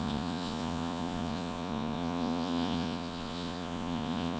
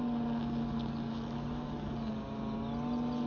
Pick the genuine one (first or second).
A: second